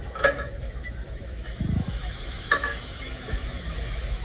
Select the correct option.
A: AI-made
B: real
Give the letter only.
A